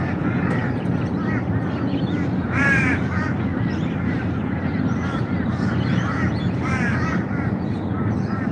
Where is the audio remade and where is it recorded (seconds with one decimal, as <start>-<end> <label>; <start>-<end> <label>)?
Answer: 0.0-8.5 remade